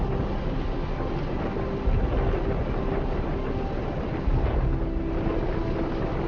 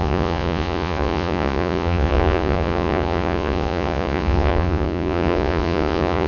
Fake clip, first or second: second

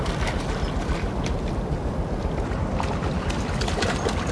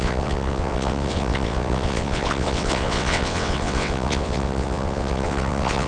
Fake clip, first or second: second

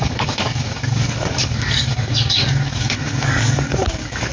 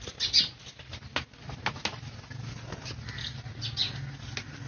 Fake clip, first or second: first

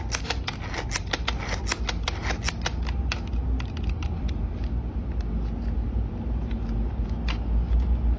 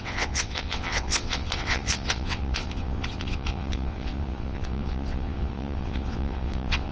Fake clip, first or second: second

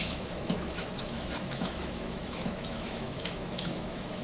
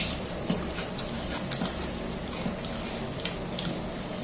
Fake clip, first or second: first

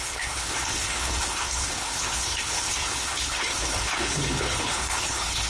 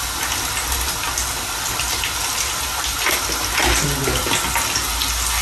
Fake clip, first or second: first